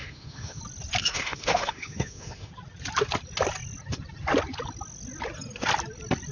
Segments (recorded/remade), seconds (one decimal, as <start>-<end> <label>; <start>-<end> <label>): 0.0-0.6 remade; 0.6-1.0 recorded; 1.0-2.5 remade; 2.5-6.3 recorded